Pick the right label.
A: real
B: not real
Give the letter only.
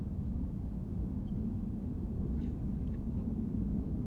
B